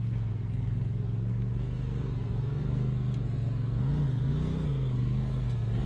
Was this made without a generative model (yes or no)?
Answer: no